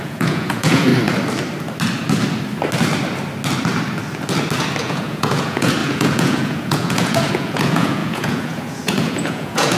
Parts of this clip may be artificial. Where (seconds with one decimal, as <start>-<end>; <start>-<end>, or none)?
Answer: 0.0-0.9; 4.8-9.8